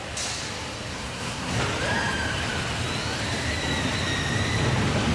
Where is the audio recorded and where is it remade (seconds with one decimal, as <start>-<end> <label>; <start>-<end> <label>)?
0.0-0.9 recorded; 0.9-1.6 remade; 1.6-5.1 recorded